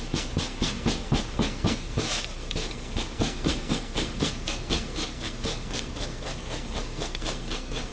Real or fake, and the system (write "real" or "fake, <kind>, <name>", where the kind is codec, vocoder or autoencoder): fake, codec, SNAC